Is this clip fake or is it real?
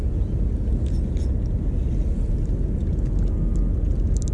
real